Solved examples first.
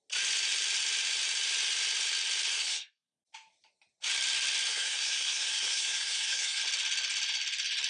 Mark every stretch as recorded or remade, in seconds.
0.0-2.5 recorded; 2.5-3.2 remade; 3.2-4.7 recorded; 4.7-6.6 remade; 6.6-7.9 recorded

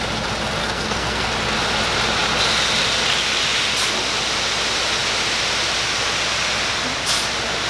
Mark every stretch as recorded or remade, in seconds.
0.0-0.6 recorded; 0.6-1.3 remade; 1.3-7.7 recorded